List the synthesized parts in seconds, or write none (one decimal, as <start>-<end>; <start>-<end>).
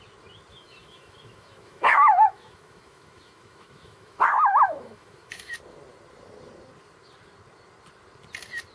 0.5-5.5